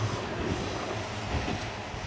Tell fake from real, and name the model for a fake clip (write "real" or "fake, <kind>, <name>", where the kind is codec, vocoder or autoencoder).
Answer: real